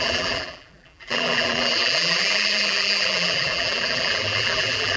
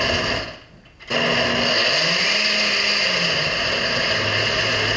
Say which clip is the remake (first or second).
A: first